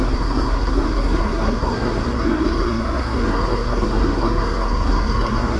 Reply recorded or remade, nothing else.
remade